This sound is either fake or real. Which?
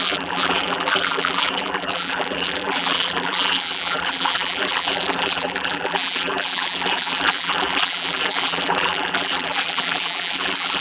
fake